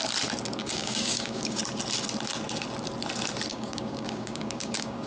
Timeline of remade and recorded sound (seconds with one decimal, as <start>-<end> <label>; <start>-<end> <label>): 0.0-0.6 recorded; 0.6-1.6 remade; 1.6-3.5 recorded; 3.5-5.1 remade